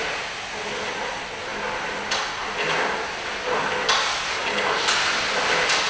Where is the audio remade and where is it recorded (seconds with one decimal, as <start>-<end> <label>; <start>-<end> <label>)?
0.0-5.9 recorded